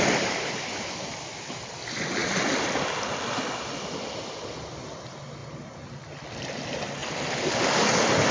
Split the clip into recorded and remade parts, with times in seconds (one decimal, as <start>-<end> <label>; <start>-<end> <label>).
0.0-8.3 recorded